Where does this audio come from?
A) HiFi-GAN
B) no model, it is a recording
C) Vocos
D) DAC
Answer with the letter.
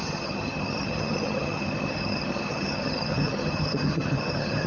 A